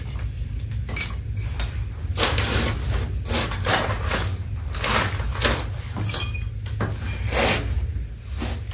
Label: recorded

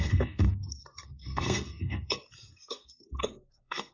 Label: remade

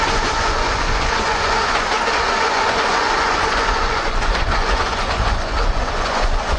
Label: remade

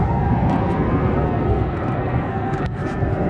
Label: remade